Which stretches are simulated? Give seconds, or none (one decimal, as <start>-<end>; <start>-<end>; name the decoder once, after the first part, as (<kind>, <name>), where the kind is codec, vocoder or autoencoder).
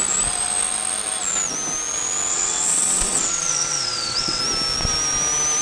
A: 2.3-4.4 (vocoder, WaveNeXt)